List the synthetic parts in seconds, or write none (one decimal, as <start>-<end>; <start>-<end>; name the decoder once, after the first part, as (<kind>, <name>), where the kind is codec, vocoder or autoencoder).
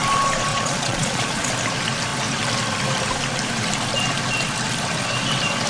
0.5-1.5 (vocoder, Vocos)